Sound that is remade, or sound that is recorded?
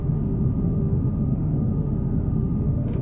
remade